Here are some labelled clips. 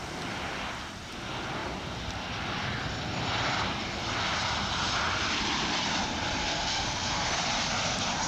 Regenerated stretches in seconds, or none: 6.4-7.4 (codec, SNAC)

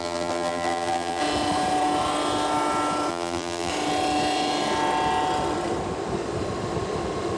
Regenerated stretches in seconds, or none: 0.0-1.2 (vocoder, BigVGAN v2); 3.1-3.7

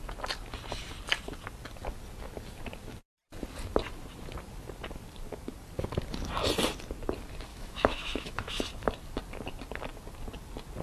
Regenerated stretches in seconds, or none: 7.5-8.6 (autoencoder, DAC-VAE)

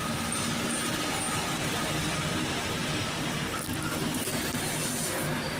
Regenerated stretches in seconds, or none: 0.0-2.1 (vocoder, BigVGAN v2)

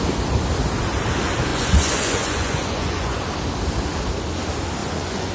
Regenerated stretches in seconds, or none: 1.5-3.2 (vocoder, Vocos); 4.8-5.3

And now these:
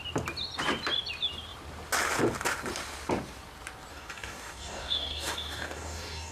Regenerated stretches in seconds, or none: 3.9-6.3 (codec, DAC)